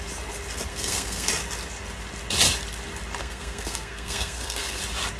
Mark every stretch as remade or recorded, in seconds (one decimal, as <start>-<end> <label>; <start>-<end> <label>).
0.0-0.7 recorded; 0.7-1.3 remade; 1.3-3.2 recorded; 3.2-4.8 remade; 4.8-5.2 recorded